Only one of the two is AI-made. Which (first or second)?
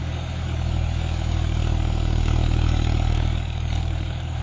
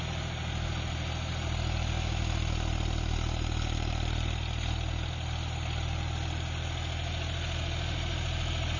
first